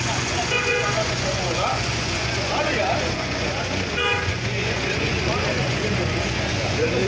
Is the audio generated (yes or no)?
yes